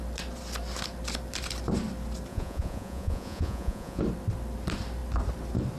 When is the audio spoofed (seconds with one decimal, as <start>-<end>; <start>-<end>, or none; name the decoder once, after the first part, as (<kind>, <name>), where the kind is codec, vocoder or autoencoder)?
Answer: 2.3-4.0 (vocoder, Vocos)